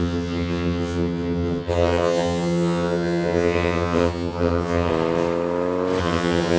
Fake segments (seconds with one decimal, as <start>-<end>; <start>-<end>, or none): 0.0-4.9; 6.0-6.6